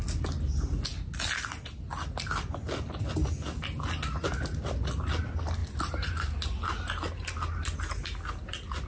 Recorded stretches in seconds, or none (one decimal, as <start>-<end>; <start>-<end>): 0.0-8.9